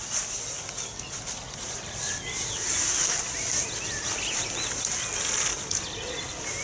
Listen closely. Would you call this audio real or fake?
real